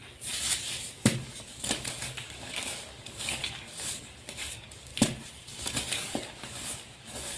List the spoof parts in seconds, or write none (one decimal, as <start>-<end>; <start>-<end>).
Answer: 0.9-4.9; 5.7-7.4